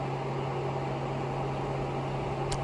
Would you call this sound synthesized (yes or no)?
no